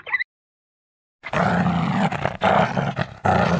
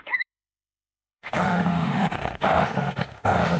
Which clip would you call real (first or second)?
first